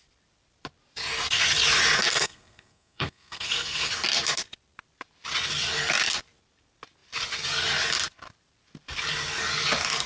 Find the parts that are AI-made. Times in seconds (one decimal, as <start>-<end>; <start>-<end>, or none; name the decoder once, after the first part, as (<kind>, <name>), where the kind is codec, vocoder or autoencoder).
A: 2.1-3.9 (codec, SNAC)

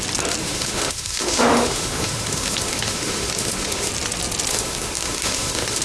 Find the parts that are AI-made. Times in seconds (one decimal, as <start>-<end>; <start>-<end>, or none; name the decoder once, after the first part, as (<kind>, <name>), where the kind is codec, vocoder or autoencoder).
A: 0.4-3.9 (autoencoder, DAC-VAE); 4.5-5.8

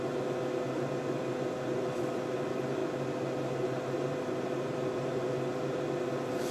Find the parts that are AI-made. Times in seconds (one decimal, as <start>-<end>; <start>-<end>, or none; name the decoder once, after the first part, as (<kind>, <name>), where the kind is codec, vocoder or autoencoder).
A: none